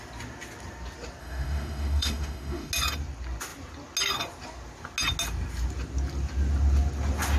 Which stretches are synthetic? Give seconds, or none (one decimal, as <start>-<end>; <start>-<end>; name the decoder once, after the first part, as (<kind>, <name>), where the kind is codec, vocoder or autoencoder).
1.2-2.7 (autoencoder, DAC-VAE)